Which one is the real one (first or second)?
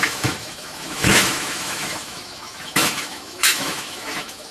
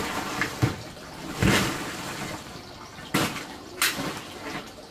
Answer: second